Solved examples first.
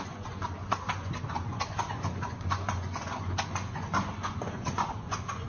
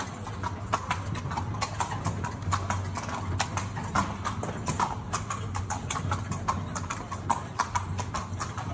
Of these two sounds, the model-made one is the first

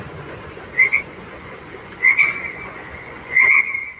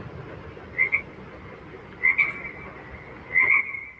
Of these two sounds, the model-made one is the first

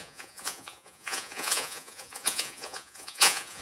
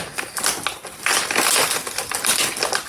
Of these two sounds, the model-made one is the first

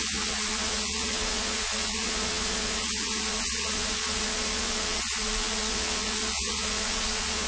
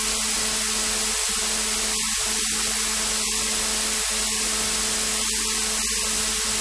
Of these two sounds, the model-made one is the first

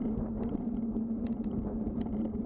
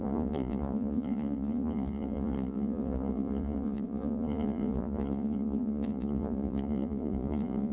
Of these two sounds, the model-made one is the second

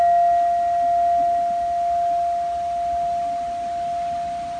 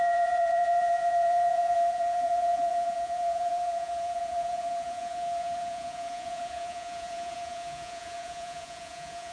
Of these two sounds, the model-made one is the second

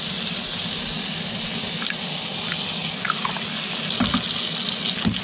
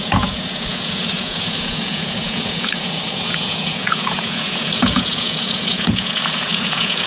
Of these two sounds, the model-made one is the second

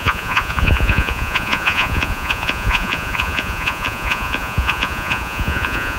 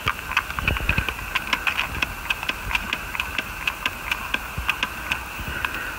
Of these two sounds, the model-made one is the first